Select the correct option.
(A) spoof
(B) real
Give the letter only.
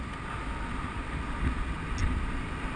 B